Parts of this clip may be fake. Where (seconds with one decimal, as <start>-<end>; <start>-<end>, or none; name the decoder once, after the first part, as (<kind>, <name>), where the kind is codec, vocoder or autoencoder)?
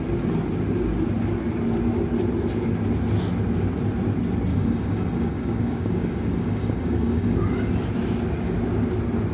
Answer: 4.5-7.7 (codec, DAC)